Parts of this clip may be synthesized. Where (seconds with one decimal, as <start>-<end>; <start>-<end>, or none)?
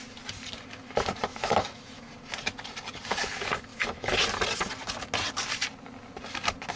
1.3-2.1; 3.7-4.2